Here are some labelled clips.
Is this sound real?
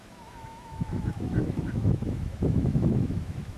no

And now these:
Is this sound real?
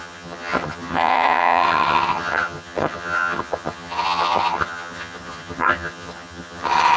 no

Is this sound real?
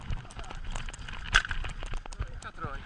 yes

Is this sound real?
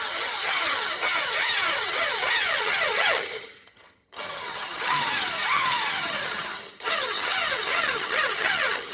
no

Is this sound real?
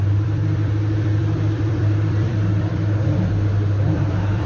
no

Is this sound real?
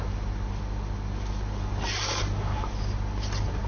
yes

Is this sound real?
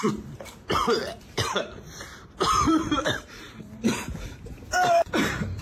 no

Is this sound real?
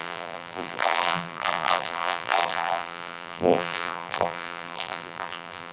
no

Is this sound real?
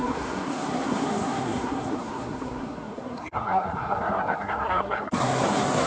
no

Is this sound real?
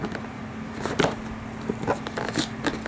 yes